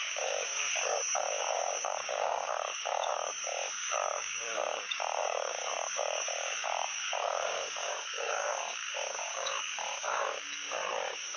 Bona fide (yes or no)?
no